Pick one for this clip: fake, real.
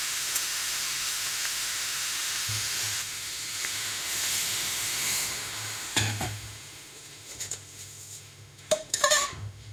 fake